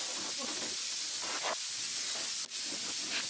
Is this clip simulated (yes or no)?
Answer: no